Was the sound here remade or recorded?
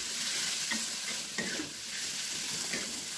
recorded